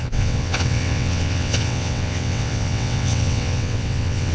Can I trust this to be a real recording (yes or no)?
no